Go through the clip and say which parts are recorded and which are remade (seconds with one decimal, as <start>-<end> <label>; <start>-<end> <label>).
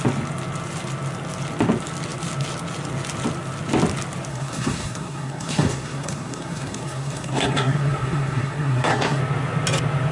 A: 0.0-4.3 recorded; 4.3-9.2 remade; 9.2-10.1 recorded